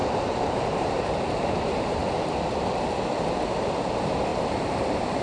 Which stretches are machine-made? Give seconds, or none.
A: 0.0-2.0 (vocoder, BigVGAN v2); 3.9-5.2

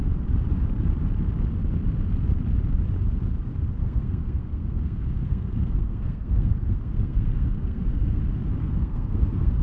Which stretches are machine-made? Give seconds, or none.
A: 3.8-8.2 (codec, SNAC); 8.6-9.6

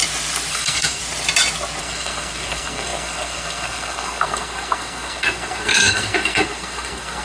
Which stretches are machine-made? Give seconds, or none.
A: 0.5-1.0 (codec, SNAC); 1.8-7.2

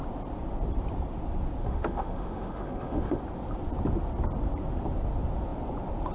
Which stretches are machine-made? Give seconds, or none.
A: 1.6-3.2 (autoencoder, DAC-VAE)

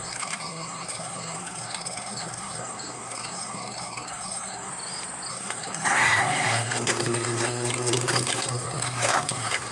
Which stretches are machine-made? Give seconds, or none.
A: 0.0-4.7 (codec, SNAC); 5.3-9.7

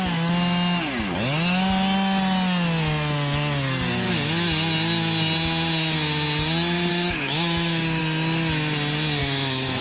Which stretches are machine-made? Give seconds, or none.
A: 6.9-8.0 (autoencoder, DAC-VAE); 9.2-9.8